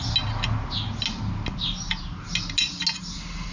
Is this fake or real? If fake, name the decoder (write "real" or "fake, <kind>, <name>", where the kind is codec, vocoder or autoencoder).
real